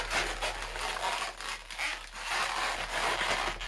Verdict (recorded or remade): recorded